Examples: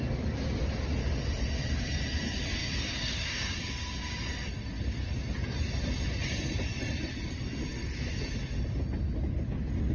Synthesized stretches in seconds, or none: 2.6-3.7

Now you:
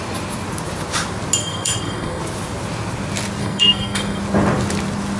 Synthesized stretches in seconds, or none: 1.4-2.2; 3.4-4.2

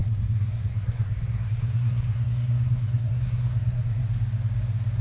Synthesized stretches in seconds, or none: 0.0-4.0

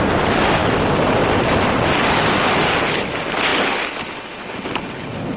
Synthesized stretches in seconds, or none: none

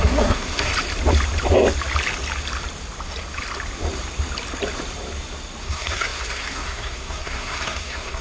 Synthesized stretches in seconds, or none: 0.0-0.7; 5.6-8.2

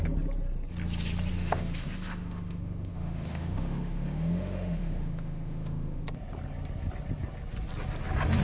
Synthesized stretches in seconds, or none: 1.3-6.0